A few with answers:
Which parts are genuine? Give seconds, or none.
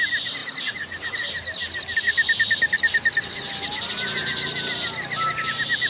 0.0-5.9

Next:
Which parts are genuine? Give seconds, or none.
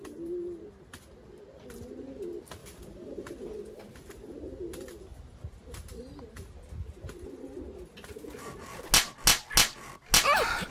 0.0-2.6; 3.6-5.1; 8.1-10.7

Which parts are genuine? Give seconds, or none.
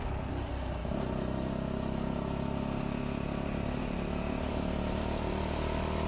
0.0-6.1